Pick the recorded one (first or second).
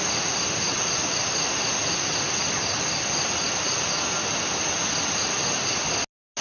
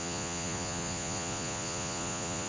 first